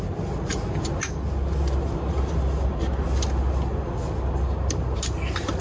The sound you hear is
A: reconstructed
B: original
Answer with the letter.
B